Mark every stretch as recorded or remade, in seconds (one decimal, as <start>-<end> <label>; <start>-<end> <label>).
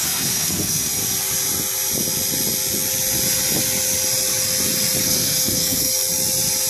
0.0-1.0 remade; 1.0-5.0 recorded; 5.0-5.9 remade; 5.9-6.7 recorded